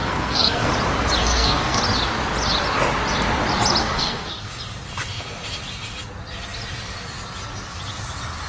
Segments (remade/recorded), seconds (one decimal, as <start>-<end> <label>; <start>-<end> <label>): 0.0-0.7 remade; 0.7-1.2 recorded; 1.2-1.8 remade; 1.8-3.8 recorded; 3.8-4.5 remade; 4.5-8.5 recorded